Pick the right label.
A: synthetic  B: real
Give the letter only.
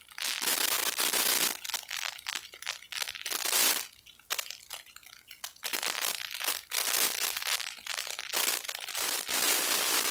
B